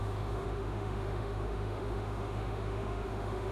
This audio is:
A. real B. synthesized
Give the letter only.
B